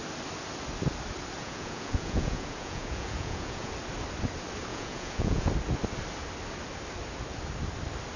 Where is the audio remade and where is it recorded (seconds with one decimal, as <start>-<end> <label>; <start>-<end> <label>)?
0.0-1.4 recorded; 1.4-3.7 remade; 3.7-4.7 recorded; 4.7-5.5 remade; 5.5-8.2 recorded